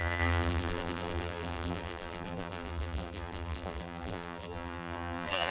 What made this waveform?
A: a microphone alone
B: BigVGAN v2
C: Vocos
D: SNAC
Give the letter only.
B